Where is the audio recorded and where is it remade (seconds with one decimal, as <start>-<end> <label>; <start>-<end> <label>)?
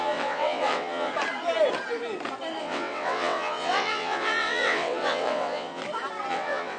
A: 0.0-1.1 remade; 1.1-2.6 recorded; 2.6-5.8 remade; 5.8-6.3 recorded; 6.3-6.8 remade